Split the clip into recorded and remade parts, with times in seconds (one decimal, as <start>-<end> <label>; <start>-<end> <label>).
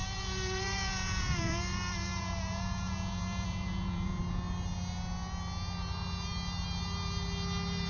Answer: 0.0-4.2 remade; 4.2-7.9 recorded